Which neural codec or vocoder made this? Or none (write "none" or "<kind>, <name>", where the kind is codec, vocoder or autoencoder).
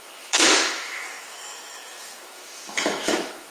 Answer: autoencoder, DAC-VAE